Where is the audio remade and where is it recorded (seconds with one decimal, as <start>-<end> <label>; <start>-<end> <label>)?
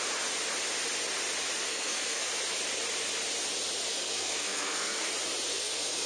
0.0-1.7 recorded; 1.7-2.3 remade; 2.3-3.9 recorded; 3.9-5.1 remade; 5.1-5.5 recorded; 5.5-6.1 remade